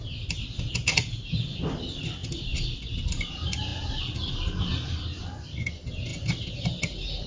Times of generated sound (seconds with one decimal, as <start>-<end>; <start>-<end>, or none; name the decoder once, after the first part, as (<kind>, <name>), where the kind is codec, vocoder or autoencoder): 2.2-2.9 (vocoder, BigVGAN v2); 4.7-5.2

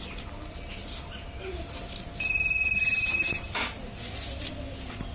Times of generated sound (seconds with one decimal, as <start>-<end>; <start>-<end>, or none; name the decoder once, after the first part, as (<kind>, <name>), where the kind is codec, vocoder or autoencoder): 0.8-3.9 (vocoder, BigVGAN v2)

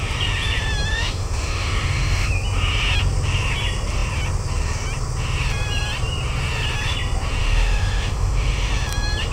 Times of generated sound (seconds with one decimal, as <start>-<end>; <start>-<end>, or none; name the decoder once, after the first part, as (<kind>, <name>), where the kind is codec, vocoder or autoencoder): 0.9-2.3 (autoencoder, DAC-VAE); 7.4-8.7

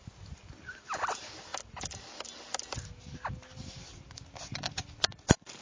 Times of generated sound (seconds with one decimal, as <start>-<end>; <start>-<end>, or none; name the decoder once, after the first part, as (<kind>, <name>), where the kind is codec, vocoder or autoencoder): none

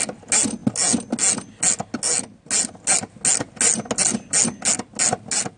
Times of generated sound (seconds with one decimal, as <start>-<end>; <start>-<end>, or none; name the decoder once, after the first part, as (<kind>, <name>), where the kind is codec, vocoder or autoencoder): none

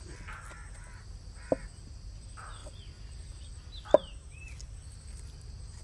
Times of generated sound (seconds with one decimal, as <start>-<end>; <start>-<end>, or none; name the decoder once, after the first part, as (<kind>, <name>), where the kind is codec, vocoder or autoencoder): none

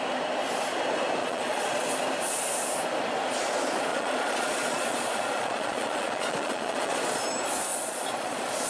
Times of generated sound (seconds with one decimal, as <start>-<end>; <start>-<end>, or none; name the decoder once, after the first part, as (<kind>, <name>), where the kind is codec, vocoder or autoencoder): 1.2-1.9 (vocoder, Vocos); 3.9-7.2; 7.7-8.7

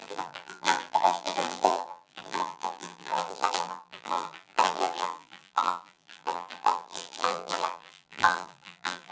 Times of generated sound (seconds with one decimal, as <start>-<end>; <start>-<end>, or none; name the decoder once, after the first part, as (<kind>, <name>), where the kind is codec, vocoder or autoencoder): 0.0-9.1 (vocoder, BigVGAN v2)